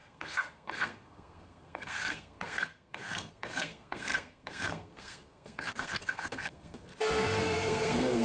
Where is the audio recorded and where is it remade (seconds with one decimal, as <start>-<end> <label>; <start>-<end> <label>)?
0.0-6.9 remade; 6.9-7.4 recorded; 7.4-8.2 remade

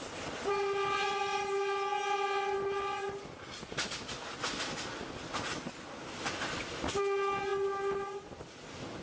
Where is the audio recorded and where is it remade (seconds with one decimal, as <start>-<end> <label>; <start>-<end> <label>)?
0.0-9.0 recorded

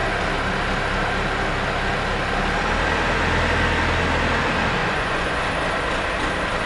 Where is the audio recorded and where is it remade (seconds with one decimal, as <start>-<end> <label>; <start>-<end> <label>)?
0.0-4.8 recorded; 4.8-5.4 remade; 5.4-6.7 recorded

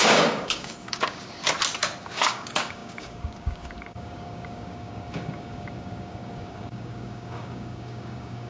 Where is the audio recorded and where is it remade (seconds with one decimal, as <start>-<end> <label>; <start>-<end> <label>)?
0.0-1.4 remade; 1.4-2.0 recorded; 2.0-8.5 remade

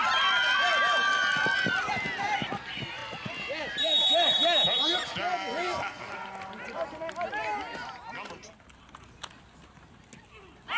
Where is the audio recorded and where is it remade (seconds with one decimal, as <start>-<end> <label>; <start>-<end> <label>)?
0.0-10.8 recorded

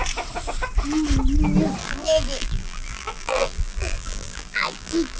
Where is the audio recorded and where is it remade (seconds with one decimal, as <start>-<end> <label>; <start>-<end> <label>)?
0.0-1.8 recorded; 1.8-5.2 remade